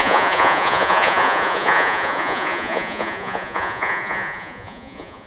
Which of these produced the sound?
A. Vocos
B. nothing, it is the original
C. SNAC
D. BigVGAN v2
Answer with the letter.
A